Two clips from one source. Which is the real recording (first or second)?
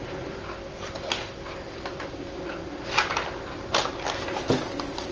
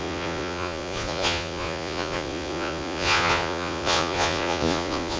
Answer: first